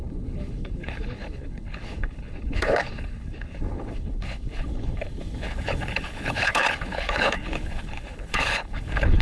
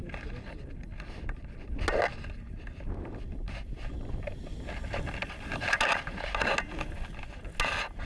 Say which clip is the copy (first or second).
first